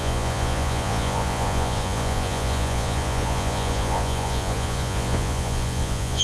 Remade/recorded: remade